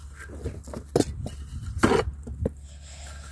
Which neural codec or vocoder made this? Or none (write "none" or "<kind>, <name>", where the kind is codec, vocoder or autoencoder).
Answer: none